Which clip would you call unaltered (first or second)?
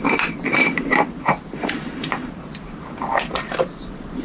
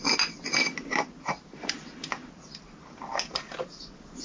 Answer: second